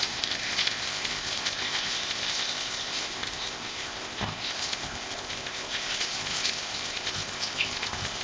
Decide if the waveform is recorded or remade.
remade